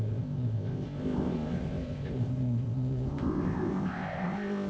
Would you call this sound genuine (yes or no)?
no